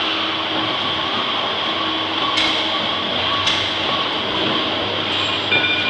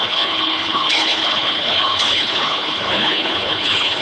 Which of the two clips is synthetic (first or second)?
second